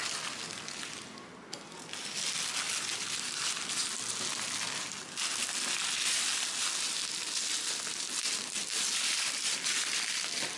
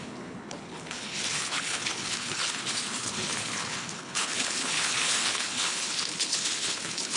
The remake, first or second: second